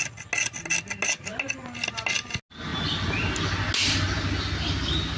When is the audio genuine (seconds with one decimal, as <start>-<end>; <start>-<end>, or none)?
0.0-5.2